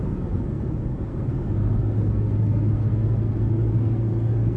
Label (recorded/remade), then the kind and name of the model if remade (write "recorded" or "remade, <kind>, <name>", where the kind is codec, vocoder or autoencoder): remade, codec, SNAC